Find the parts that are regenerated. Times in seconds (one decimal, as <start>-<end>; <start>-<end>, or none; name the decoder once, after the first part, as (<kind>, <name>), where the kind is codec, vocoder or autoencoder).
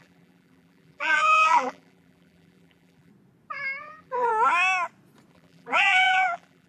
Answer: 0.0-3.1 (vocoder, BigVGAN v2); 3.8-4.3; 5.3-6.7